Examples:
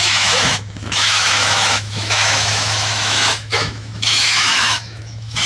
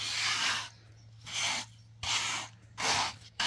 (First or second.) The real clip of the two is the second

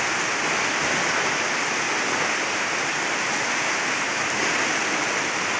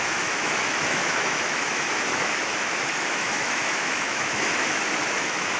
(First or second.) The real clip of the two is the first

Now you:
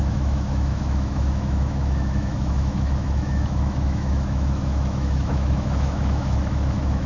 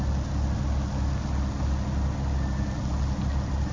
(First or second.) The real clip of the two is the second